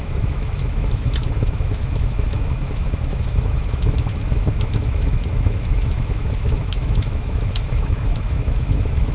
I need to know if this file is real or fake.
fake